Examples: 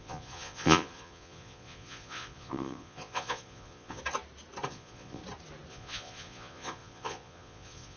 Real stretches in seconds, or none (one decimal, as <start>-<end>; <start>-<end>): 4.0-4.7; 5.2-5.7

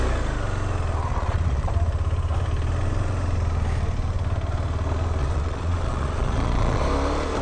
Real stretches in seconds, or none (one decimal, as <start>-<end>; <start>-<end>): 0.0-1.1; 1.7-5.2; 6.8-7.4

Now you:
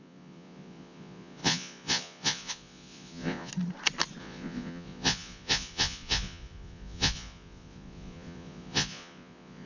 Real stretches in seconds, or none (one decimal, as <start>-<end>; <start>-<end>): 3.5-4.2

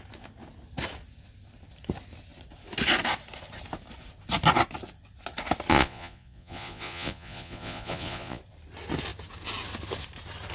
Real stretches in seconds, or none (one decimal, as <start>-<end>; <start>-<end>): 0.0-5.7; 8.4-10.5

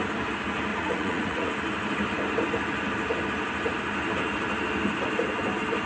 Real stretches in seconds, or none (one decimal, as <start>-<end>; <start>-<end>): 0.0-0.7; 1.5-5.9

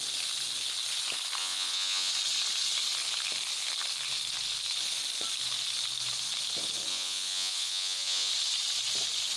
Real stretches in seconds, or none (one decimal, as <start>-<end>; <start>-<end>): 0.0-1.4; 2.1-6.9; 8.3-9.4

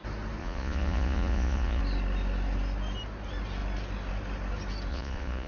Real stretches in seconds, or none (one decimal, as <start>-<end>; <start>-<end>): 0.0-0.4; 1.8-4.9